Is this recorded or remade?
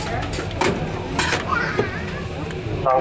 recorded